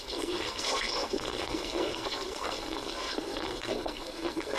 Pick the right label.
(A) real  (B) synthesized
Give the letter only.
B